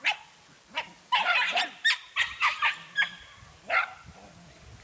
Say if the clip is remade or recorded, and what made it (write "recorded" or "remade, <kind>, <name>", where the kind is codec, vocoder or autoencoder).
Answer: recorded